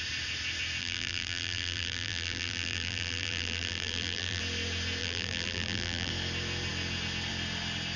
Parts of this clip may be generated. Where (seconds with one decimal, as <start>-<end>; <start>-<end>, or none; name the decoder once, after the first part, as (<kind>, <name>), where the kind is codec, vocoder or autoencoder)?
0.8-4.4 (vocoder, BigVGAN v2); 5.0-6.1